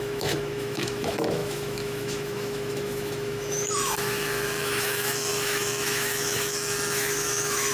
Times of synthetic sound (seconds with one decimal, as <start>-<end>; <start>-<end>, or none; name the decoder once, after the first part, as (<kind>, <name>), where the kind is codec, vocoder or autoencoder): 0.0-7.7 (autoencoder, DAC-VAE)